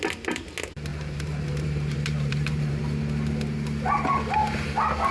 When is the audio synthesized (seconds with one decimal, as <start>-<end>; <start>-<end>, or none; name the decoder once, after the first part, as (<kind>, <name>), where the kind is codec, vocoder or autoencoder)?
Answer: 0.9-2.8 (vocoder, BigVGAN v2)